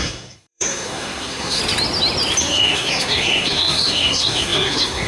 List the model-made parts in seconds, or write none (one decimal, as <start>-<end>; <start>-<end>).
0.0-1.6; 2.4-5.1